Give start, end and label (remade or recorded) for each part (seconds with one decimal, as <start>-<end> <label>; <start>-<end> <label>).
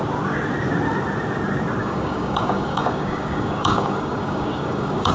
0.0-1.8 recorded; 1.8-5.1 remade